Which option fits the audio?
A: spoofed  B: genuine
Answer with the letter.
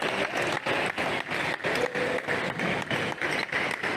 B